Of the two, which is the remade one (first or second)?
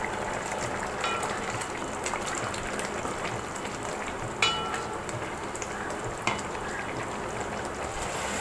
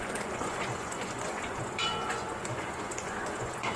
second